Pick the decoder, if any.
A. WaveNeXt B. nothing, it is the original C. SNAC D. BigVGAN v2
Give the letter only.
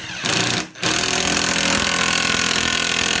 B